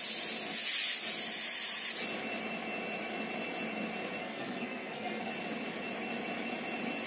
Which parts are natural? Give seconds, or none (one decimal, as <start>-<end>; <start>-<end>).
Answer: 0.0-4.2; 5.3-7.1